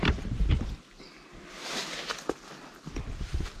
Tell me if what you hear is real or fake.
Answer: real